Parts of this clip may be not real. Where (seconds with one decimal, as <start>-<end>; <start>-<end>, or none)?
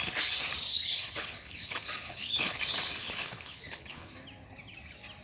0.7-2.6; 3.0-4.1